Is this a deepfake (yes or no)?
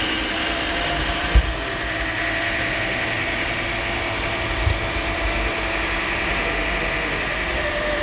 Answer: no